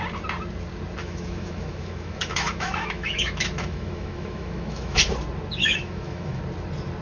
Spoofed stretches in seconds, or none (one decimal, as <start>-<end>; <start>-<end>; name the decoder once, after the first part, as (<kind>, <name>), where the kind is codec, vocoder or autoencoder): 1.0-5.0 (autoencoder, DAC-VAE); 5.6-6.4